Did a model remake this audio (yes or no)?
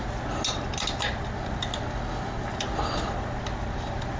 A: no